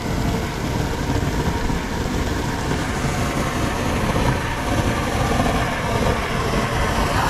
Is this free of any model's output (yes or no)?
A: yes